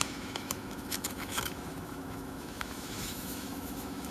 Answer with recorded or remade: remade